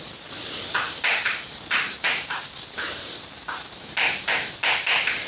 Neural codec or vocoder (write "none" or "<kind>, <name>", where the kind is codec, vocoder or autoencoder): vocoder, BigVGAN v2